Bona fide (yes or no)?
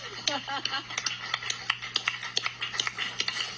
yes